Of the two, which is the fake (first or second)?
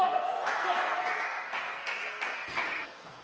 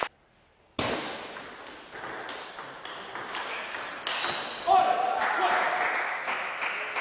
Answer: first